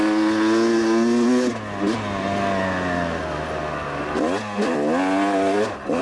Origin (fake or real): real